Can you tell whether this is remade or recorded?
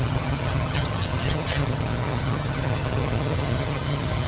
remade